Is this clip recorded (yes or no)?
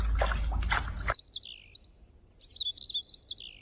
yes